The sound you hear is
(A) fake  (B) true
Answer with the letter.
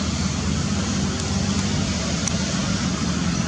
B